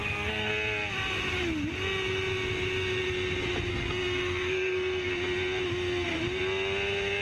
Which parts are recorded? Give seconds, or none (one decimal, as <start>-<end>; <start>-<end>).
0.5-3.7; 5.1-7.2

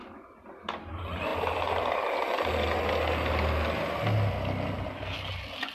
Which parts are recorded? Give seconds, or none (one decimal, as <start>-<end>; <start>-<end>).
0.0-5.7

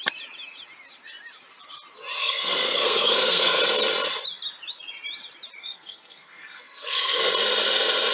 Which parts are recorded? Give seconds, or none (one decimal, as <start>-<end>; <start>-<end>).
0.0-2.2; 3.6-5.6; 7.2-8.1

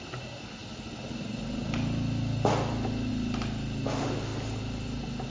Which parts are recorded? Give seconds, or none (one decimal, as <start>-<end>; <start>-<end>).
0.0-5.3